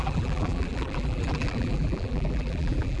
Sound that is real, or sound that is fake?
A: fake